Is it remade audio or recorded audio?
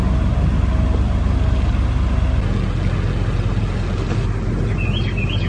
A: recorded